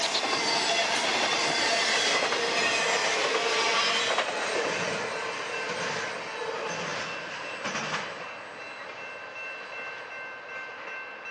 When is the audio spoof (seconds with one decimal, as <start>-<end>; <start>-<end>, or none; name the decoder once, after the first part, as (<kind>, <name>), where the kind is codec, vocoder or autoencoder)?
none

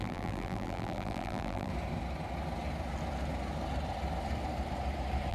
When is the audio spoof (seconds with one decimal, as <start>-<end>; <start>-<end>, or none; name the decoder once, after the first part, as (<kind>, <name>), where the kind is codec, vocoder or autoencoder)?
0.0-1.7 (vocoder, BigVGAN v2)

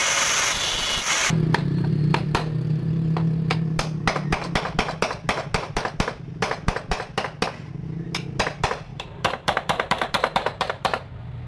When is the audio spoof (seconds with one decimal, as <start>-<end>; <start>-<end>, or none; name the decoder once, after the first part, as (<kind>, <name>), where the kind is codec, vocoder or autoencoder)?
8.9-11.1 (vocoder, BigVGAN v2)

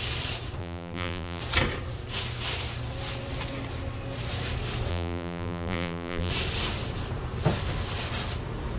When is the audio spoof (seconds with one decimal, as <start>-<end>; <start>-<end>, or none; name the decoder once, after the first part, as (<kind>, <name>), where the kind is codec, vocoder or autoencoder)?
0.6-1.4 (vocoder, BigVGAN v2); 4.9-6.3

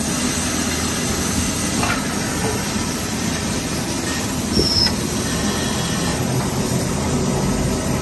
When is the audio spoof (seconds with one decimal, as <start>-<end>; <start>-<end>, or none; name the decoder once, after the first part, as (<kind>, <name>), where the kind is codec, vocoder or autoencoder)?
2.4-4.4 (vocoder, BigVGAN v2); 6.1-6.6

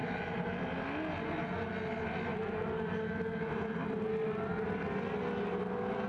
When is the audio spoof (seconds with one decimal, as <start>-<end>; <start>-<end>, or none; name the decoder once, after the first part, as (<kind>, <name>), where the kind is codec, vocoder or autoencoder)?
0.0-0.6 (vocoder, BigVGAN v2); 2.3-3.4

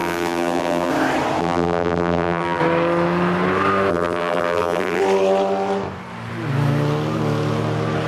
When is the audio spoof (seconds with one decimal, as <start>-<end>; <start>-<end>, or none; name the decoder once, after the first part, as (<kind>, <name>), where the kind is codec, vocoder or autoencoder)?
0.0-0.9 (vocoder, BigVGAN v2); 1.4-2.6; 3.9-5.0

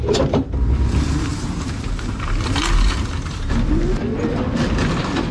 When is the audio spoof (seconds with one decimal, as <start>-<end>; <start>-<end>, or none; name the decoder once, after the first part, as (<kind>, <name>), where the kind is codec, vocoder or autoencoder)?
1.3-3.5 (vocoder, BigVGAN v2)